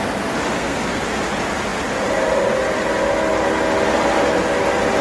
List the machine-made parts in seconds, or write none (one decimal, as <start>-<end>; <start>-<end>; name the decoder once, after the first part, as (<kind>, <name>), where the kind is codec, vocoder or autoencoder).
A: 0.5-1.0 (codec, SNAC)